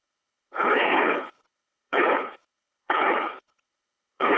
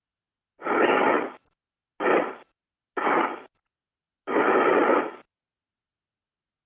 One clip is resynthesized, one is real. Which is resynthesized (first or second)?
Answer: first